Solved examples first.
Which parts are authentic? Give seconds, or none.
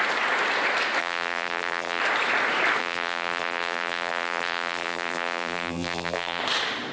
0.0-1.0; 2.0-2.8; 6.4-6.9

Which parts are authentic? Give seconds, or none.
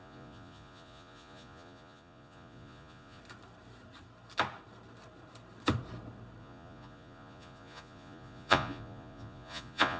3.2-6.4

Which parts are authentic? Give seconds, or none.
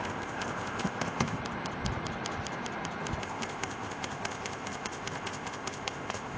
1.4-3.2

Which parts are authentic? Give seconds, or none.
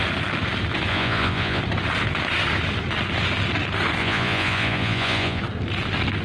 0.0-0.9; 1.6-4.0; 5.4-6.2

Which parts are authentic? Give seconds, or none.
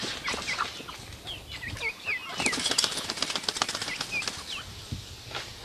0.0-5.6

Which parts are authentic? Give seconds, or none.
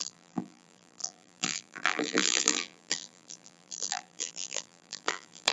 none